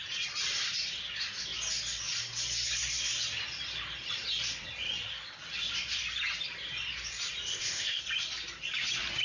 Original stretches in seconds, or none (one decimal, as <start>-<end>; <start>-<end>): 0.0-7.5; 8.0-9.2